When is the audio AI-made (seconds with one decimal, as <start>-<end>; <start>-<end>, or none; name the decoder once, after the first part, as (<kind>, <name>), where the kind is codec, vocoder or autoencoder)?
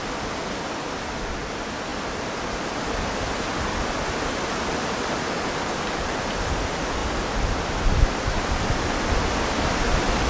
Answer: none